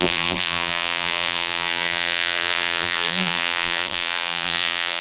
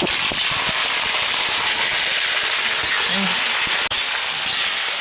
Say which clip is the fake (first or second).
first